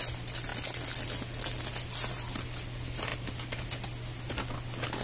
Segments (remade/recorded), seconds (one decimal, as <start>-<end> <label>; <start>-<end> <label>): 0.0-5.0 recorded